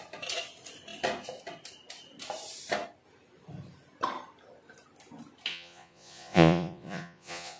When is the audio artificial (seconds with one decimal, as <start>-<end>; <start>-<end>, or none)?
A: 5.5-7.6